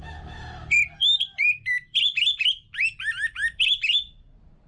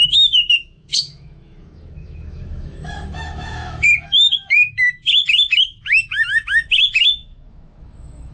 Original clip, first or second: first